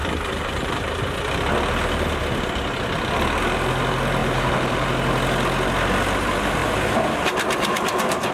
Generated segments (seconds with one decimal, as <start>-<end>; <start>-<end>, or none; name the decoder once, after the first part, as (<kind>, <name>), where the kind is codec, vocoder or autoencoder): 0.0-1.0 (vocoder, BigVGAN v2); 4.2-4.9; 6.6-8.3